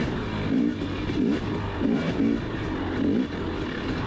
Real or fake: real